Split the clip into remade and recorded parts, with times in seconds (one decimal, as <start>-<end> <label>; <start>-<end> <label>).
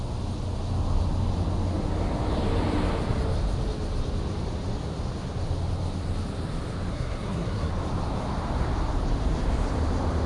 0.0-6.9 recorded; 6.9-7.7 remade; 7.7-10.3 recorded